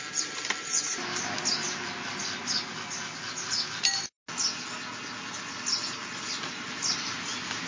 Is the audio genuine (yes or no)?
yes